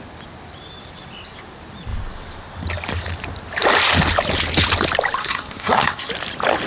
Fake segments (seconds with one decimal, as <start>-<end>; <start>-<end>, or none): 5.2-6.1